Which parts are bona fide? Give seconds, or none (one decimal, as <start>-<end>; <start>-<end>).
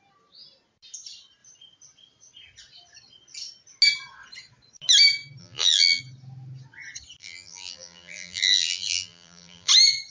0.0-5.4; 6.0-7.2; 9.7-10.1